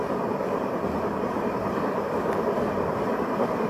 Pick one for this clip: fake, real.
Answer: fake